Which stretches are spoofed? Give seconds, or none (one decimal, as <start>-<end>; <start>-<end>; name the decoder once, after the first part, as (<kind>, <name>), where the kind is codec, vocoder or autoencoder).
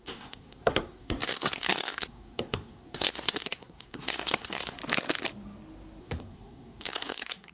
0.0-4.8 (codec, SNAC); 6.0-7.5